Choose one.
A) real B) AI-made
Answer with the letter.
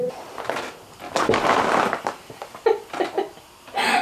A